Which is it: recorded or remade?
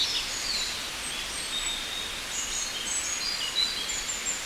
recorded